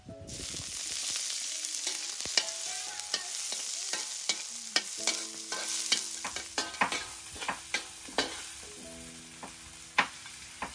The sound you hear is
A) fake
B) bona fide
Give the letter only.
B